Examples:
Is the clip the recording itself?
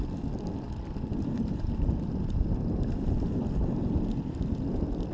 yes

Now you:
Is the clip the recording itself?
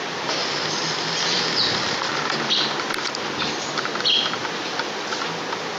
yes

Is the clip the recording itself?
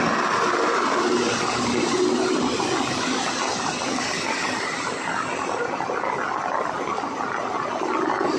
yes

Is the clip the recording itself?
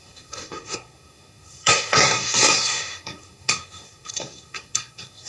no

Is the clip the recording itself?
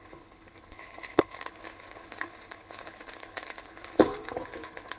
no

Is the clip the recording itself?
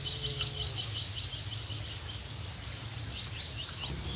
yes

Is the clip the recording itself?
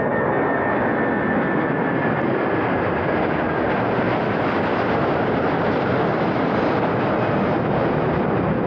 yes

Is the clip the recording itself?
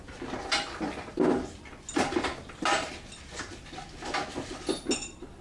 yes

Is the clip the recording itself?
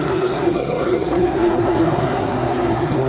no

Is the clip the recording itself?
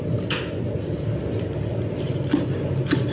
yes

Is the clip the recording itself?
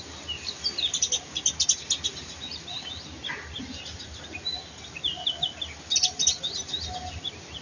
yes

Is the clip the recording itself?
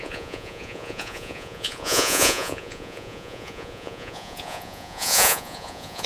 no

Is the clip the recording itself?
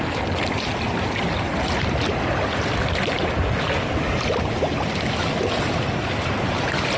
yes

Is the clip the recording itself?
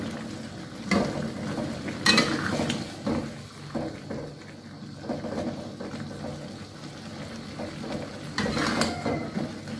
yes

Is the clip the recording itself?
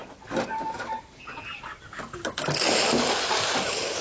yes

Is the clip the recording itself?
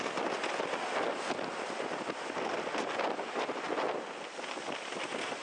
yes